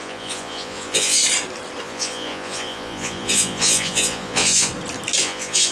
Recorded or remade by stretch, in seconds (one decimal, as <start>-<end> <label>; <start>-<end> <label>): 0.0-1.2 remade; 1.2-1.8 recorded; 1.8-4.7 remade; 4.7-5.2 recorded; 5.2-5.7 remade